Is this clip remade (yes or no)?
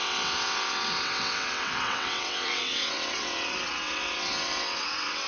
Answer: yes